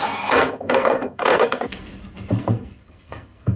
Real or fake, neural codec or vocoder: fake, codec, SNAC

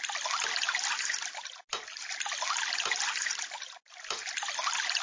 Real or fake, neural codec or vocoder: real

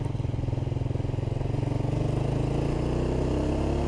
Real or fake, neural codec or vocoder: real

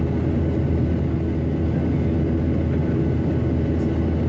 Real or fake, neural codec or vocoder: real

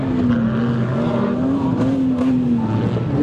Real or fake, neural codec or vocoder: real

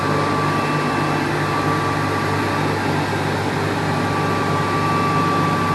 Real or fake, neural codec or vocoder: real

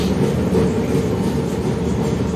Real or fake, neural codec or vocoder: real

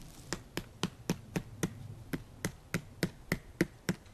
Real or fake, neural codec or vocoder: real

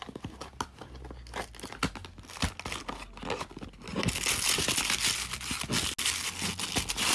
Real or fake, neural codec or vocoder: real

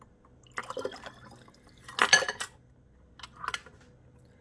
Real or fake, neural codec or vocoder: real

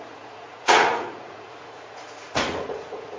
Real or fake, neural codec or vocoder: fake, vocoder, Vocos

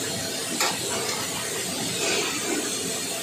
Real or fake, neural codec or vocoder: real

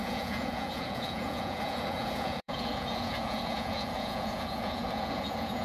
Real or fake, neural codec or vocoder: fake, vocoder, Vocos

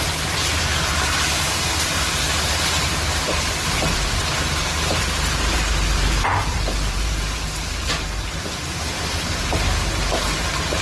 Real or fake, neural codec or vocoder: fake, vocoder, BigVGAN v2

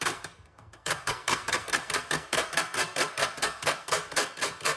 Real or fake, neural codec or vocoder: fake, codec, SNAC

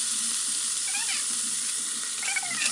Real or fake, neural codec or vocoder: fake, vocoder, BigVGAN v2